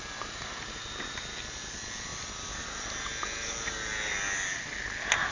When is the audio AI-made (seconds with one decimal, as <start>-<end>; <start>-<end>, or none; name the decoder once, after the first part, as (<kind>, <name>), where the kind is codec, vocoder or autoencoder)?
none